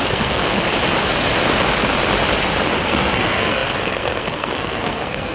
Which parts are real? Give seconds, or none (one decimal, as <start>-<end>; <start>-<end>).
0.4-2.8